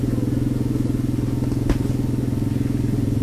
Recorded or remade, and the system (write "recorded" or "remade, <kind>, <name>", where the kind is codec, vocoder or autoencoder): recorded